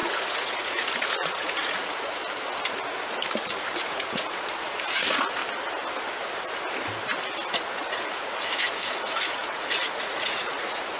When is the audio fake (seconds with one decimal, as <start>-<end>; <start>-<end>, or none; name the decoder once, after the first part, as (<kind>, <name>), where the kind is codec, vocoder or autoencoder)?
0.0-2.2 (vocoder, Vocos); 3.9-5.4; 7.5-11.0